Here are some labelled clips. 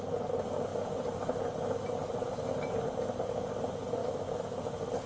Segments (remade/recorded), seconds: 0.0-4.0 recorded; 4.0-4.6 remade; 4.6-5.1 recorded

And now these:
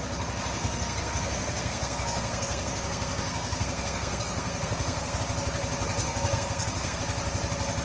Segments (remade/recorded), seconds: 0.0-0.6 recorded; 0.6-5.2 remade; 5.2-6.0 recorded; 6.0-7.0 remade; 7.0-7.8 recorded

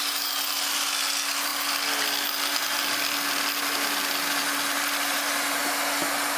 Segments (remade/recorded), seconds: 0.0-6.4 recorded

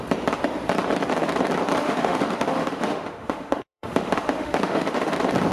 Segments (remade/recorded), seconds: 0.0-1.8 recorded; 1.8-5.1 remade; 5.1-5.5 recorded